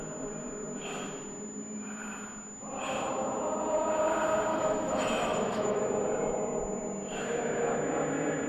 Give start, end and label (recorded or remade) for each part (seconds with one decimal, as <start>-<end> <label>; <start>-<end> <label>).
0.0-4.5 recorded; 4.5-5.8 remade; 5.8-8.5 recorded